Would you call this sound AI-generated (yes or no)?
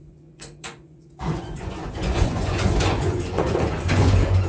yes